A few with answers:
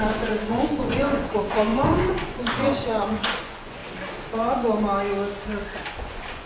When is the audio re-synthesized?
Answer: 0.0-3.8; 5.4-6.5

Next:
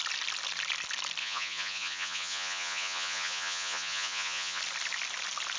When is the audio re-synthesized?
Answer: 1.2-4.6

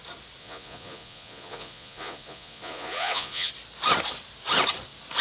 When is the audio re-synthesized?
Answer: 0.4-3.5